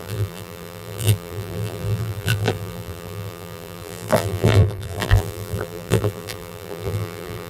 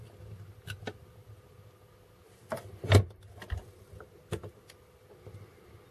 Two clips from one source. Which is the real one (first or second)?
second